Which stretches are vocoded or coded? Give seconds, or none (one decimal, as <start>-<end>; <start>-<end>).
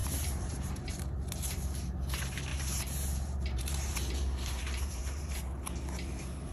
0.0-0.9; 2.5-5.3